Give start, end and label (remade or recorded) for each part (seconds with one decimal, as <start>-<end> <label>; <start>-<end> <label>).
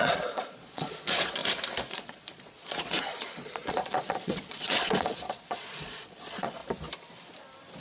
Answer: 0.0-1.4 remade; 1.4-1.9 recorded; 1.9-6.6 remade; 6.6-7.8 recorded